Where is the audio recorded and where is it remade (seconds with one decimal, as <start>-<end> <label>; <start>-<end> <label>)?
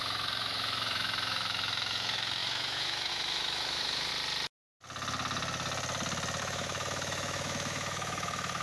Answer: 0.0-4.1 remade; 4.1-6.4 recorded; 6.4-8.6 remade